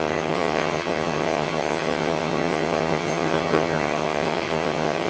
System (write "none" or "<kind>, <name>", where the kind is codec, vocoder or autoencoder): vocoder, HiFi-GAN